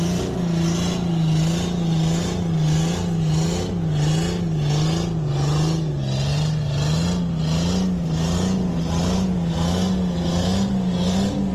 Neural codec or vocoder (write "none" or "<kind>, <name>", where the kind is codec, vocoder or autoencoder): none